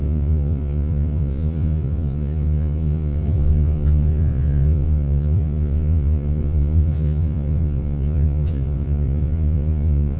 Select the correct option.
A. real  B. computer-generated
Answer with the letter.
B